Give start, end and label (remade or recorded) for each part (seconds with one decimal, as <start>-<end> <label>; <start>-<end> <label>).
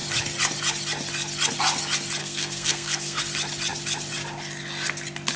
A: 0.0-2.2 recorded; 2.2-3.2 remade; 3.2-5.4 recorded